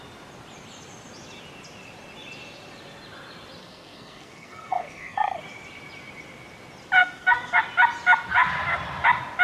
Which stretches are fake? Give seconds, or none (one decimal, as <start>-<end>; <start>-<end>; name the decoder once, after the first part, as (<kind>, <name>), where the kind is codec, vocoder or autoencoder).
3.6-5.4 (codec, SNAC); 7.0-7.6